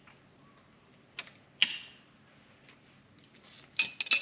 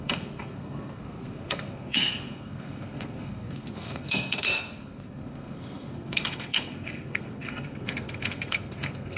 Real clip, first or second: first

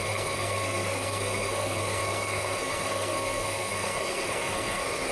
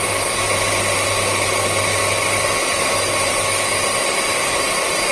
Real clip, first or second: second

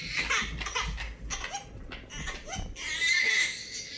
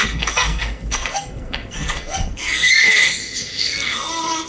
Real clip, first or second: first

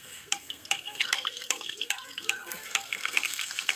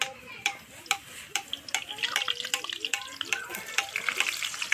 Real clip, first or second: second